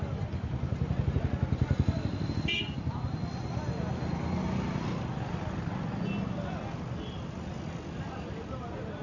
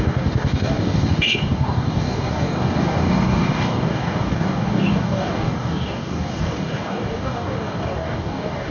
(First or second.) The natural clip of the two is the first